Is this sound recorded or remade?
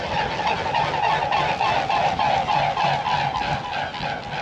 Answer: recorded